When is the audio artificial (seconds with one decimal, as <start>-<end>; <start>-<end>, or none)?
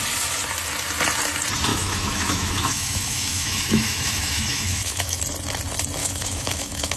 1.7-5.2; 6.0-7.0